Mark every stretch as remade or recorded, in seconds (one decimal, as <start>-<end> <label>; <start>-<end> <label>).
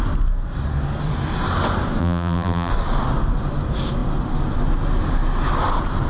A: 0.0-2.0 recorded; 2.0-2.7 remade; 2.7-6.1 recorded